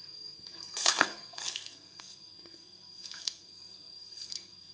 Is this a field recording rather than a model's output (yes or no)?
no